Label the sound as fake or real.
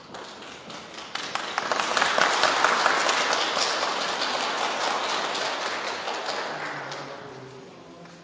real